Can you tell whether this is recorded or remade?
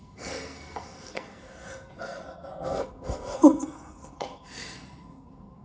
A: remade